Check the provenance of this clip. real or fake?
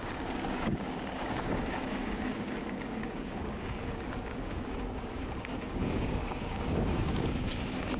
fake